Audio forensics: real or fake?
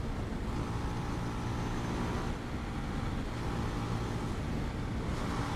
real